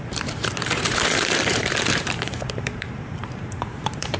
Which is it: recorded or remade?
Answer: remade